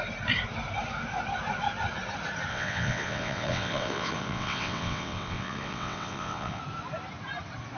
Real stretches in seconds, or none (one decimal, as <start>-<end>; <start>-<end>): 0.0-2.5; 6.6-7.8